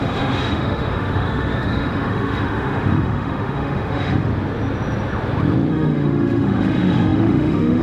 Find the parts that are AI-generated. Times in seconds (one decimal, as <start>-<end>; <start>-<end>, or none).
0.0-4.3; 5.7-7.8